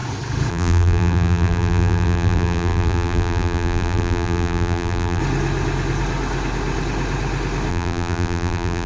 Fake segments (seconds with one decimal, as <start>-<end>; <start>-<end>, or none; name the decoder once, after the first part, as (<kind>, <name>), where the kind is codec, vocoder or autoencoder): 0.5-5.2 (vocoder, BigVGAN v2); 7.7-8.9